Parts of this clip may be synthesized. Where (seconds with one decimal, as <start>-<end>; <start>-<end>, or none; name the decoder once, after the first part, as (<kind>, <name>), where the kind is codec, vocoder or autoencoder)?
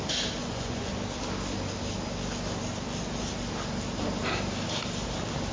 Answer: 0.4-0.9 (vocoder, Vocos)